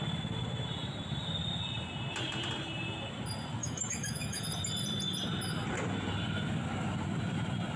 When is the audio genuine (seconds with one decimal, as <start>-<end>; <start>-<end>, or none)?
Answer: 0.0-3.6; 4.4-7.8